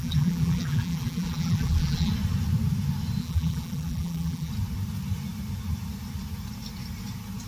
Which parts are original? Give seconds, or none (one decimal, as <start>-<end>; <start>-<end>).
2.1-3.2; 4.5-7.5